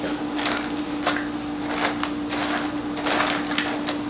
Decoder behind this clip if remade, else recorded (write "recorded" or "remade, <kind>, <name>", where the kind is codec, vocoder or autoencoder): recorded